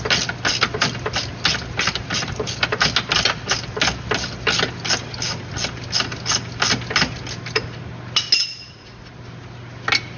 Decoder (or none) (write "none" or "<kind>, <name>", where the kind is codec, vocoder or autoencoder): none